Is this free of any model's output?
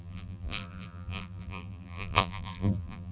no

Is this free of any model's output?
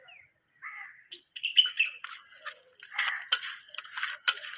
yes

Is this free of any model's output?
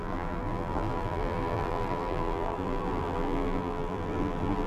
no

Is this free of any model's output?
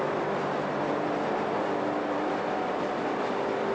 no